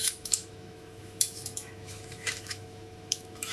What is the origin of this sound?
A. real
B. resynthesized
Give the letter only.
B